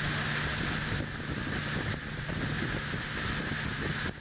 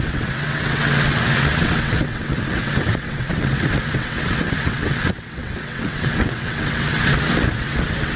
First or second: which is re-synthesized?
second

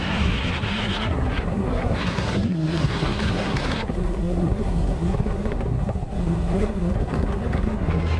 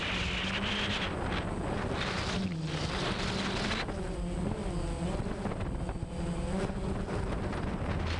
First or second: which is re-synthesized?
first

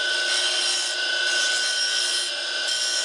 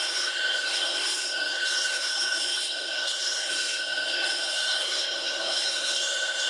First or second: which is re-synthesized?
second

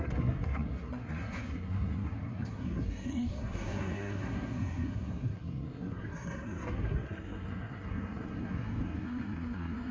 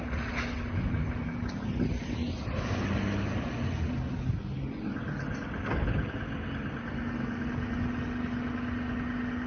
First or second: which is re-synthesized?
first